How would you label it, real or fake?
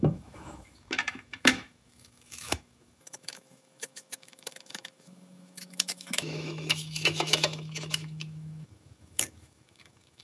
fake